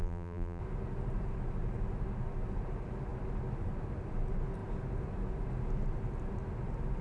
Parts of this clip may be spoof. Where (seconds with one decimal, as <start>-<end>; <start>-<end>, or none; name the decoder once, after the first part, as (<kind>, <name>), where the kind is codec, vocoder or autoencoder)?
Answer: 0.0-0.6 (vocoder, BigVGAN v2)